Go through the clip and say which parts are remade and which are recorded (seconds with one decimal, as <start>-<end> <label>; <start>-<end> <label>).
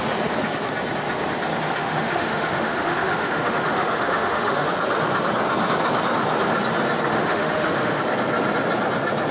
0.0-1.8 recorded; 1.8-4.7 remade; 4.7-7.1 recorded; 7.1-8.0 remade; 8.0-9.3 recorded